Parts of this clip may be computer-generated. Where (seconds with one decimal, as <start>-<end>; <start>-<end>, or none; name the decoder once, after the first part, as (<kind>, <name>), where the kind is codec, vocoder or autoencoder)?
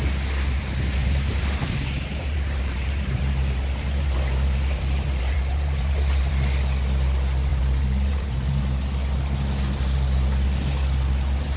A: 1.0-6.3 (vocoder, BigVGAN v2); 7.5-8.6